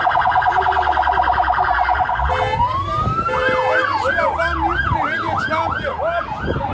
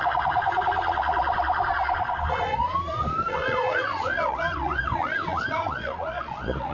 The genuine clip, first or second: first